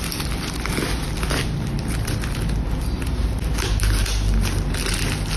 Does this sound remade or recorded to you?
recorded